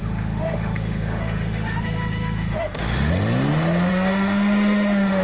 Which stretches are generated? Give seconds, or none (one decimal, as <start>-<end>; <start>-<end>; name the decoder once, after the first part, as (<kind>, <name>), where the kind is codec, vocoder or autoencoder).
0.0-3.1 (autoencoder, DAC-VAE); 3.9-5.2